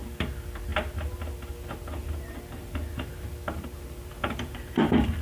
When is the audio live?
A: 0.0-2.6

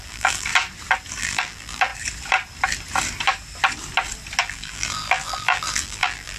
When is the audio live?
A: 0.5-1.2; 1.9-4.4

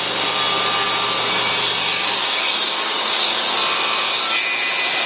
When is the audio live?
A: 0.0-1.8; 3.5-5.1

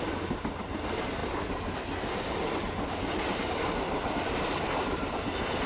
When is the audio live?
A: 0.0-5.7

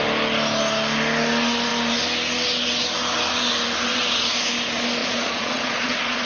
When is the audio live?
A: 0.0-5.0

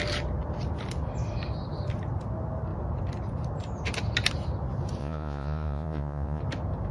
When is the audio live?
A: 0.0-5.0; 6.4-6.9

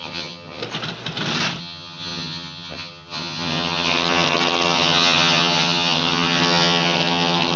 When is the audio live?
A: 0.6-1.6

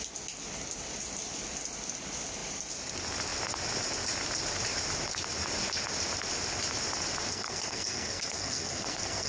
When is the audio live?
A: 0.0-7.3